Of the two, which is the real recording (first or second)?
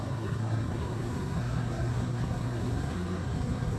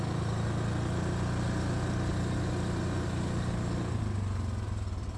second